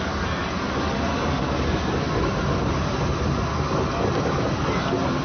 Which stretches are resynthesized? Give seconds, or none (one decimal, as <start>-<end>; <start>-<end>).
none